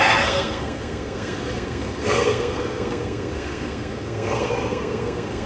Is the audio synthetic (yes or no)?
yes